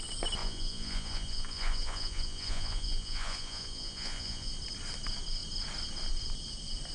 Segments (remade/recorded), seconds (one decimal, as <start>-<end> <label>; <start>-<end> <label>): 0.0-0.4 recorded; 0.4-4.5 remade; 4.5-6.9 recorded